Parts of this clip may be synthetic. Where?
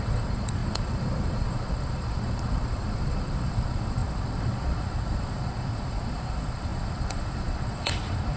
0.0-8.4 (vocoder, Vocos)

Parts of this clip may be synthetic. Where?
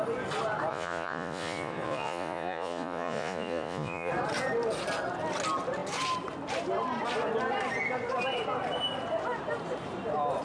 0.7-4.1 (vocoder, Vocos)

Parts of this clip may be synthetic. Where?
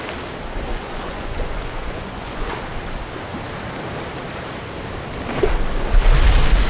0.7-2.6 (vocoder, Vocos)